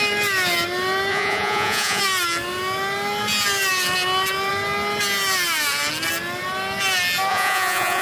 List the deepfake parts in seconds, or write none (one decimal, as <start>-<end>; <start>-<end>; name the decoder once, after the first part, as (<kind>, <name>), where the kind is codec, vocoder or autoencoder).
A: 1.1-2.0 (vocoder, Vocos); 7.3-8.0